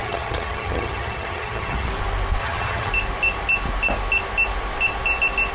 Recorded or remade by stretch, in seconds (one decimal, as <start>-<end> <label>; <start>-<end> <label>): 0.0-1.9 remade; 1.9-2.4 recorded; 2.4-2.9 remade; 2.9-5.5 recorded